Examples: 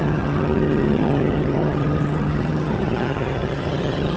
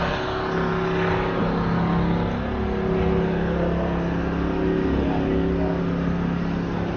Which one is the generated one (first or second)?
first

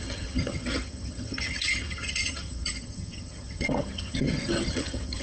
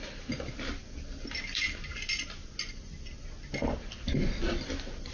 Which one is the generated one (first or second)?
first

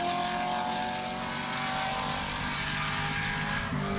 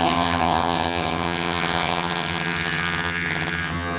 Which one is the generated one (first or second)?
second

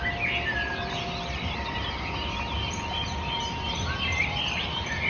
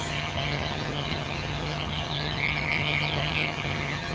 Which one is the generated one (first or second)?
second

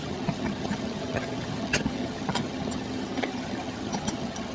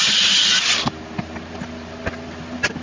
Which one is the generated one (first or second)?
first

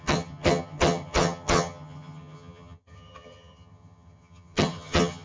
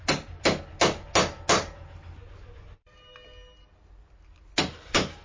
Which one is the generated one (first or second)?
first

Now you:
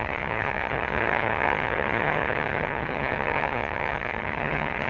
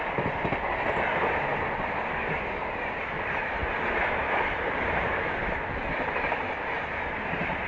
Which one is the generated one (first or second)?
first